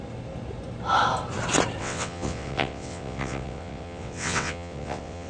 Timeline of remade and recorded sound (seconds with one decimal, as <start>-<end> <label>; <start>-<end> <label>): 0.0-1.8 recorded; 1.8-5.3 remade